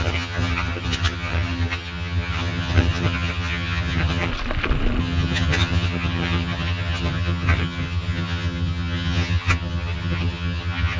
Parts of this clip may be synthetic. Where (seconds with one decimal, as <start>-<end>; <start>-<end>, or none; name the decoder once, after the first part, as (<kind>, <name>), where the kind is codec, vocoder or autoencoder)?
0.0-4.3 (vocoder, HiFi-GAN); 5.0-11.0